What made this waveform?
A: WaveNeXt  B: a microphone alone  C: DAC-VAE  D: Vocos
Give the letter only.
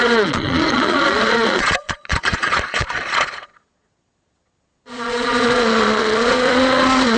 D